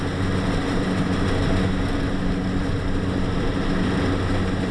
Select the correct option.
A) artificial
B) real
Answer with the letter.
B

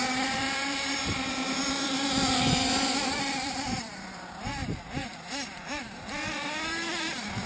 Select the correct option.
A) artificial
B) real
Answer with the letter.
A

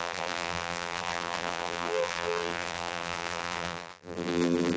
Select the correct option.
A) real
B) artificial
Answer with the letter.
B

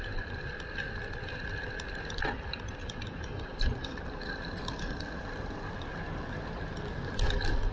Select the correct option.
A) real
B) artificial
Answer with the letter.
A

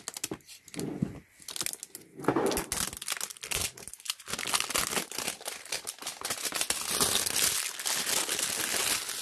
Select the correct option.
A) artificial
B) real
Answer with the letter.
B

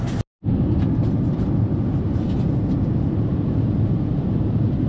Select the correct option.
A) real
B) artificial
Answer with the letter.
A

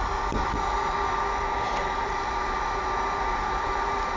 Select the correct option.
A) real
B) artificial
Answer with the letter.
A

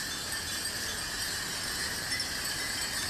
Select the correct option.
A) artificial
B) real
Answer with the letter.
A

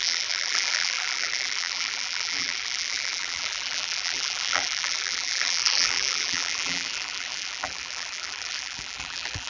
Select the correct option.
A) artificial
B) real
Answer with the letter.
A